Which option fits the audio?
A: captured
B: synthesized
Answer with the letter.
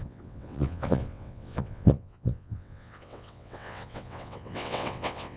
B